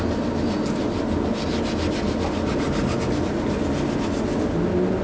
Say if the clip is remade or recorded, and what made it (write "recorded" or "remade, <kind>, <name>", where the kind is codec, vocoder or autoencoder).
recorded